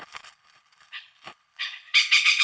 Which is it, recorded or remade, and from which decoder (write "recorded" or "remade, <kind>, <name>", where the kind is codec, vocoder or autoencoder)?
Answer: remade, codec, HILCodec